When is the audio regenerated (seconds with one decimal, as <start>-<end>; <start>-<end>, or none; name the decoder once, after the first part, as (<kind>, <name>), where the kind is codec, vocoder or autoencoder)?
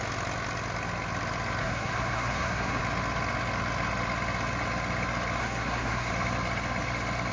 1.6-2.8 (codec, SNAC); 5.4-6.1